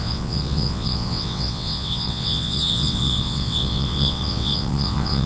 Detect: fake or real fake